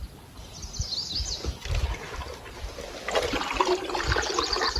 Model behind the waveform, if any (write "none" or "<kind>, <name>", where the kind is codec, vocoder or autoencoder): none